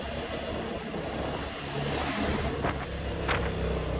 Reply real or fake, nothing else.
real